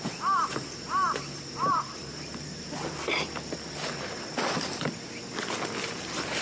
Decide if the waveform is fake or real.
real